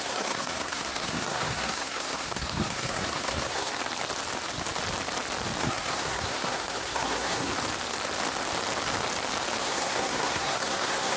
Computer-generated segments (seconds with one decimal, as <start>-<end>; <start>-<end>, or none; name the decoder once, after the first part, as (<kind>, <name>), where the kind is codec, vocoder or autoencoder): 0.0-3.7 (codec, SNAC); 5.6-7.5; 9.6-11.2